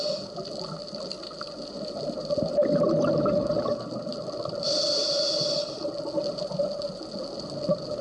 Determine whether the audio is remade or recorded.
recorded